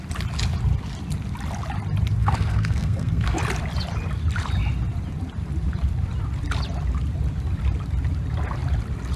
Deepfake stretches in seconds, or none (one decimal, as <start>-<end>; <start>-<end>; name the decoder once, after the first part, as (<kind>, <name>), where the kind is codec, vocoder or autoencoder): 2.2-3.4 (codec, SNAC)